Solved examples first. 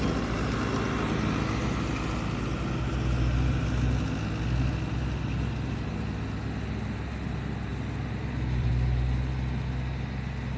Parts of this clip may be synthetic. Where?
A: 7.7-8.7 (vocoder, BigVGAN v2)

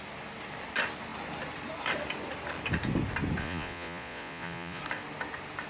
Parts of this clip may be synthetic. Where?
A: 3.4-4.8 (vocoder, Vocos)

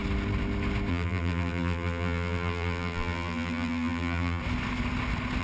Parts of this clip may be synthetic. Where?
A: 0.9-4.4 (vocoder, BigVGAN v2)